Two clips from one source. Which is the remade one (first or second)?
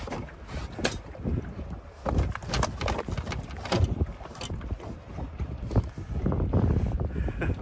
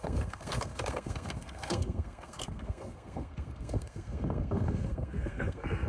second